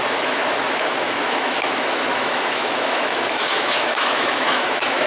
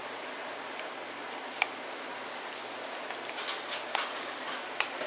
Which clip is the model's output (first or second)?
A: first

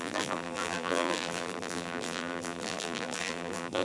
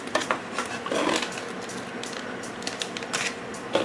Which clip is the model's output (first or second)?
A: first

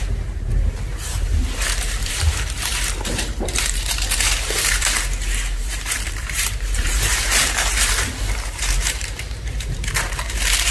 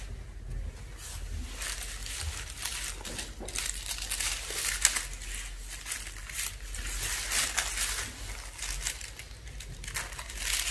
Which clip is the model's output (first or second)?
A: first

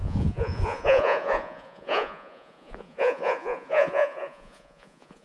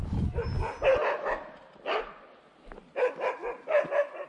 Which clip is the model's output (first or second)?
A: first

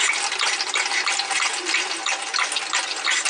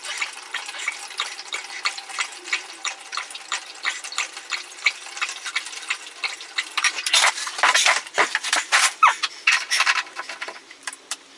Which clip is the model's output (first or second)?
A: second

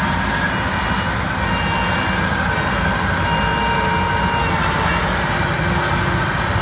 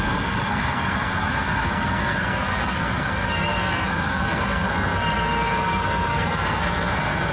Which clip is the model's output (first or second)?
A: second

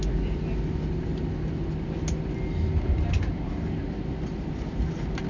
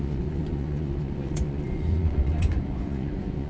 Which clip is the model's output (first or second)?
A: second